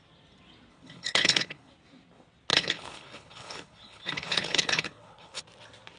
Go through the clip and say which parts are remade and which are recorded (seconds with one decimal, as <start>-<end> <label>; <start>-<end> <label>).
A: 0.0-0.7 recorded; 0.7-1.7 remade; 1.7-2.5 recorded; 2.5-5.4 remade; 5.4-6.0 recorded